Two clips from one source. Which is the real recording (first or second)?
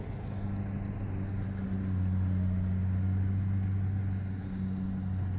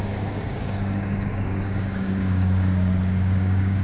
first